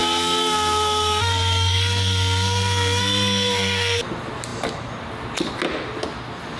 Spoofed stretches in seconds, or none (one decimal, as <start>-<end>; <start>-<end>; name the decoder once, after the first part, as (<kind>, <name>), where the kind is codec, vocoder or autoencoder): 0.0-4.0 (codec, SNAC)